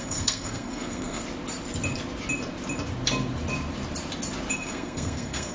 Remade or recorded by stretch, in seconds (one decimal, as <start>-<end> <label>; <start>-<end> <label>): 0.0-1.2 remade; 1.2-4.5 recorded; 4.5-5.5 remade